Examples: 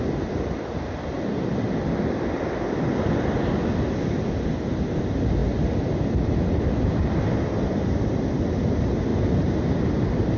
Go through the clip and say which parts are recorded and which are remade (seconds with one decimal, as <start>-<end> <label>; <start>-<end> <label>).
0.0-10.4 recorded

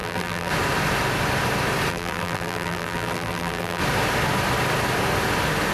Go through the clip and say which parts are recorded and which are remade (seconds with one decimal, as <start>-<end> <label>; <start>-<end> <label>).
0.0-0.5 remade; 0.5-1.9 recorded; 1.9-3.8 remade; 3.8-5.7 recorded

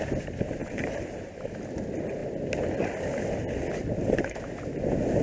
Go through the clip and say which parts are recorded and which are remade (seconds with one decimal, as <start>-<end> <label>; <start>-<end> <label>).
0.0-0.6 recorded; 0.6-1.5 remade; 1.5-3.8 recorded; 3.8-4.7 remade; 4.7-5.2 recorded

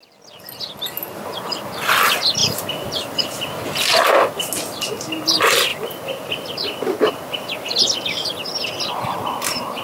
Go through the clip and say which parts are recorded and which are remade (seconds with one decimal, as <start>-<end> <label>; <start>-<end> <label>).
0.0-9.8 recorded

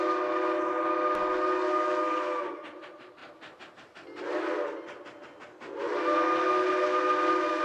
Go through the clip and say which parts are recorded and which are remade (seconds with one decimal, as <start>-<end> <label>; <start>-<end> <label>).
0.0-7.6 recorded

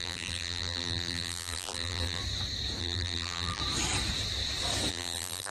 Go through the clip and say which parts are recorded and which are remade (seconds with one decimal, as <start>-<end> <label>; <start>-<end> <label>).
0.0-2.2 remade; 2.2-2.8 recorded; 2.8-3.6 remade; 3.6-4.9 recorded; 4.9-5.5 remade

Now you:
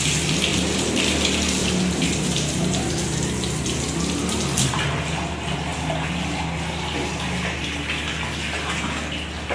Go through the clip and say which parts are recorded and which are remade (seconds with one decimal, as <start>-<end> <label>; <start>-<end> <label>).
0.0-1.6 recorded; 1.6-2.9 remade; 2.9-9.5 recorded